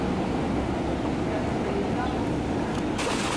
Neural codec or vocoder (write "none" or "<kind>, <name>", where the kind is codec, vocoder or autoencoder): none